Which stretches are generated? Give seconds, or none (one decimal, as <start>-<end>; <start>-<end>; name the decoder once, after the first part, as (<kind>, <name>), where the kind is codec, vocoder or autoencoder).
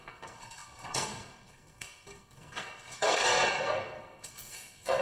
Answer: 0.0-5.0 (codec, SNAC)